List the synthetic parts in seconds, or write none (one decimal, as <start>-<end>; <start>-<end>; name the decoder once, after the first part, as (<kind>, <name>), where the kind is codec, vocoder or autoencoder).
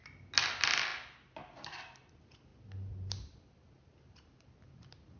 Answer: none